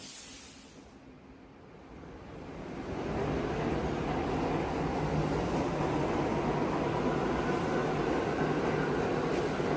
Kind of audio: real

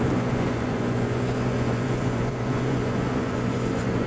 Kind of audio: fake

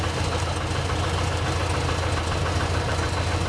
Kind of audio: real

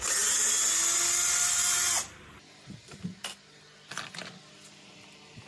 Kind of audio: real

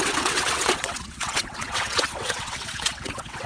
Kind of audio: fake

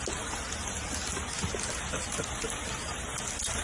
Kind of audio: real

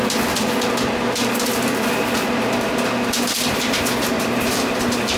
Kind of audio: real